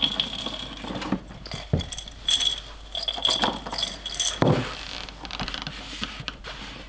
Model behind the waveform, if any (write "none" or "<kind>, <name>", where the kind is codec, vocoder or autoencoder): none